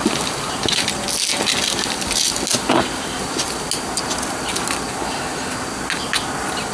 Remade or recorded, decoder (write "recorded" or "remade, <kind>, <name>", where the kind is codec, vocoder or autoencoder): recorded